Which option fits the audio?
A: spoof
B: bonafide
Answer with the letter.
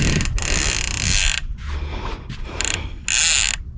B